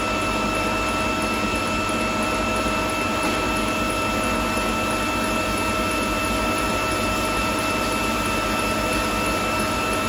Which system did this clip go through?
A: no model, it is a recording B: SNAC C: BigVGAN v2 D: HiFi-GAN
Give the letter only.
A